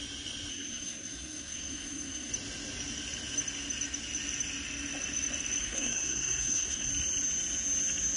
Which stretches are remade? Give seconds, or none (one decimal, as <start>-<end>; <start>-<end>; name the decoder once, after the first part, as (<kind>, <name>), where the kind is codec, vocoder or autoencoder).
0.5-2.3 (codec, SNAC); 5.6-6.9